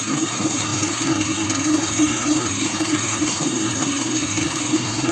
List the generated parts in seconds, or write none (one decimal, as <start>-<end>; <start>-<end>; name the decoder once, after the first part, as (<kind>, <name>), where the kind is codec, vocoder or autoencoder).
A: 0.0-5.1 (codec, SNAC)

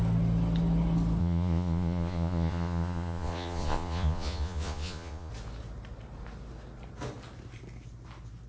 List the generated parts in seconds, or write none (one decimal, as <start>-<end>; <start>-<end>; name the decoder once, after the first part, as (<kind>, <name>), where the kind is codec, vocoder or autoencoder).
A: 1.2-5.3 (vocoder, Vocos)